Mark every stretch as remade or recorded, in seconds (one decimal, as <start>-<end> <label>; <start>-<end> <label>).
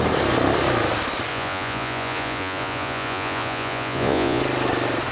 0.0-1.3 recorded; 1.3-4.4 remade; 4.4-5.1 recorded